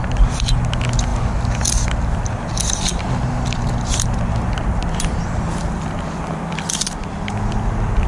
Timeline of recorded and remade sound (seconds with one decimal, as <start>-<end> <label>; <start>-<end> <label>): 0.0-8.1 recorded